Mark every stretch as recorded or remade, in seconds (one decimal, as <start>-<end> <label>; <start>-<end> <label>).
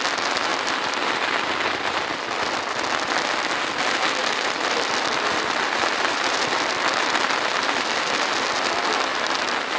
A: 0.0-0.5 recorded; 0.5-2.0 remade; 2.0-4.2 recorded; 4.2-7.9 remade; 7.9-9.1 recorded; 9.1-9.8 remade